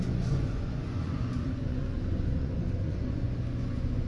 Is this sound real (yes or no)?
no